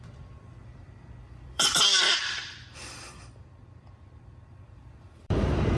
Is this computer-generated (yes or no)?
yes